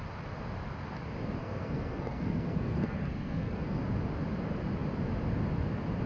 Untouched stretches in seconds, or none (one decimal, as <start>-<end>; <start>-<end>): 0.0-1.4; 3.8-6.1